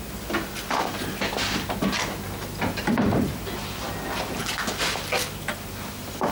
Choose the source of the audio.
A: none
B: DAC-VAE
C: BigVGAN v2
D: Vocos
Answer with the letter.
A